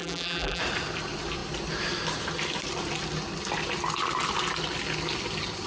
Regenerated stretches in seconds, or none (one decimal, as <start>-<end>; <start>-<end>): 0.0-0.6